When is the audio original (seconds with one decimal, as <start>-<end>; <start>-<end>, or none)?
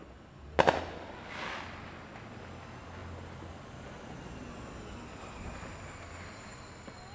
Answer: 0.0-7.1